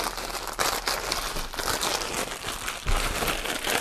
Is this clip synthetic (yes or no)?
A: no